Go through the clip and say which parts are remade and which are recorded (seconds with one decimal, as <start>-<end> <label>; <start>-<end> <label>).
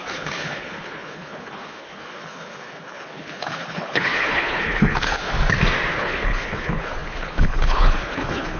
0.0-5.3 remade; 5.3-5.9 recorded; 5.9-8.6 remade